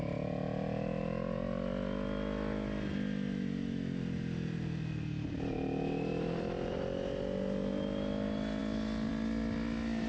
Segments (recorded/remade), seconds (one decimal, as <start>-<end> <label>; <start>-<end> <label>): 0.0-10.1 recorded